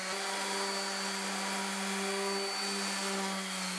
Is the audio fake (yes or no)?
no